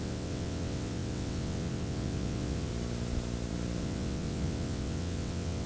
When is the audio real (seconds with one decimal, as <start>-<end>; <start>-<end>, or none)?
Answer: 2.7-3.8